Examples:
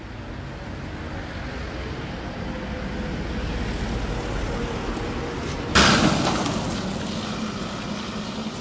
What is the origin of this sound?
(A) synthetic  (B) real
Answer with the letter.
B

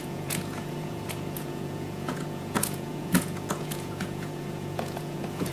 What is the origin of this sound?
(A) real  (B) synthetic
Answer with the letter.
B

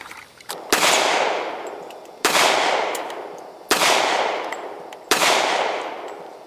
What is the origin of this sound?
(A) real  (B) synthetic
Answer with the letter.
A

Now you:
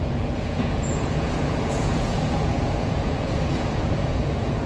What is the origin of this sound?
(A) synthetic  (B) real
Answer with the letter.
A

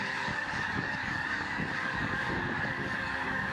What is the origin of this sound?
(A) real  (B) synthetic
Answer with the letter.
B